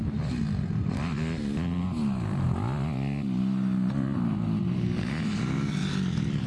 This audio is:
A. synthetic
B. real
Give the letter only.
B